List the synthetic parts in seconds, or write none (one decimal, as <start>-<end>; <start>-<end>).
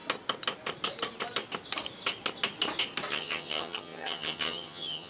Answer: 3.1-5.1